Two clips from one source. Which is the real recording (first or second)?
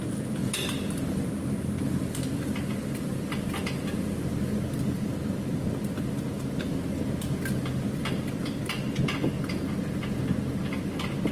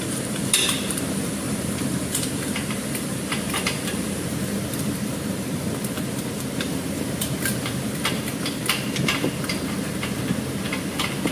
first